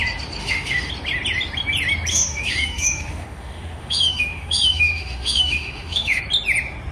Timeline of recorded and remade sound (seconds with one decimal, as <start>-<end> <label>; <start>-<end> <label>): 0.0-0.4 recorded; 0.4-0.9 remade; 0.9-2.1 recorded; 2.1-6.2 remade; 6.2-6.9 recorded